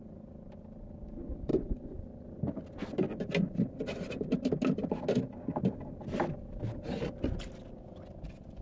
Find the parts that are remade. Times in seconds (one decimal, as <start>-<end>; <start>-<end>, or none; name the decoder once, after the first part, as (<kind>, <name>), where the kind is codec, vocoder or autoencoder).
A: none